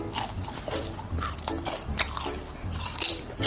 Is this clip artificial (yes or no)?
yes